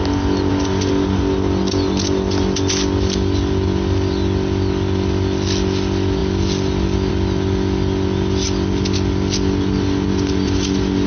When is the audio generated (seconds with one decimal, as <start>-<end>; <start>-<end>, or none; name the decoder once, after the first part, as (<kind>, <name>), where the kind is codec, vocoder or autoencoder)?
none